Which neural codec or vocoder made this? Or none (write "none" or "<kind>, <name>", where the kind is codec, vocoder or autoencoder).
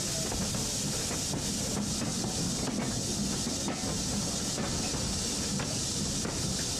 none